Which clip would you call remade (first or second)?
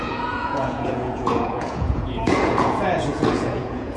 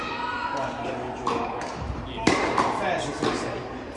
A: first